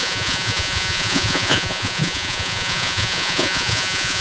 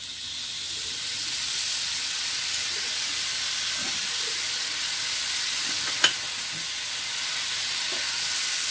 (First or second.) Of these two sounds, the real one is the second